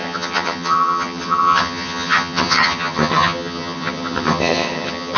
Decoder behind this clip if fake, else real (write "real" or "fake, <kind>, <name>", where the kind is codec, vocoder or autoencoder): fake, vocoder, HiFi-GAN